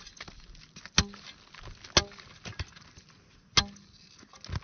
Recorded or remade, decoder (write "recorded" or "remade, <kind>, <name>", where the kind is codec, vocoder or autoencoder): recorded